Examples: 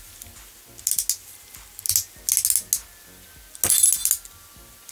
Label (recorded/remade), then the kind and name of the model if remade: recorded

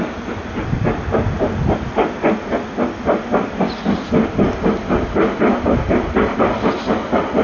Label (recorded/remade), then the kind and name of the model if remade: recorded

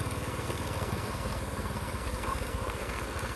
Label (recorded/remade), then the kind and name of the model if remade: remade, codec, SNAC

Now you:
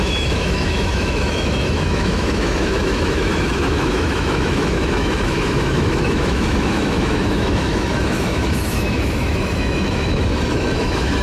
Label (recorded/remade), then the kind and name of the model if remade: remade, autoencoder, DAC-VAE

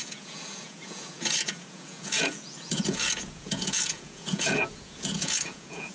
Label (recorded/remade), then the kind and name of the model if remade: remade, vocoder, Vocos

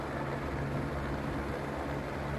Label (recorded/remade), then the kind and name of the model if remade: recorded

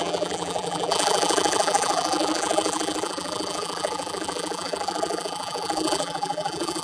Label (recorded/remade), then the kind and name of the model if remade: remade, vocoder, BigVGAN v2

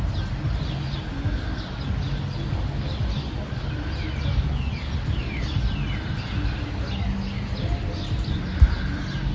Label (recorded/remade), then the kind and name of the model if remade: recorded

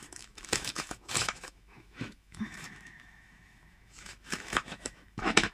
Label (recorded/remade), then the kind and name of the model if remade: remade, autoencoder, DAC-VAE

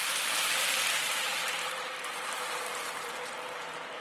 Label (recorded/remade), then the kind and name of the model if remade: remade, vocoder, BigVGAN v2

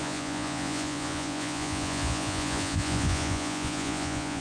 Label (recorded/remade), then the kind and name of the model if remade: remade, vocoder, Vocos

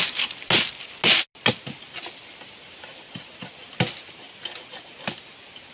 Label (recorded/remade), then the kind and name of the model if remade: recorded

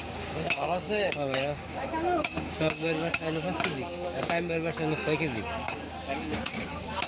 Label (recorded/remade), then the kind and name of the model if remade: remade, codec, DAC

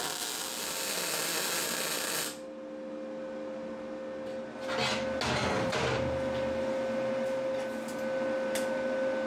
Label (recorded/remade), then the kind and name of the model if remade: recorded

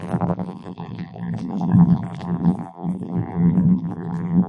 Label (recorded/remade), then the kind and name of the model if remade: remade, vocoder, BigVGAN v2